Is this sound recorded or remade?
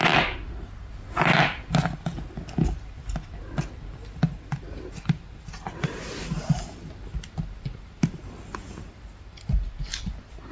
recorded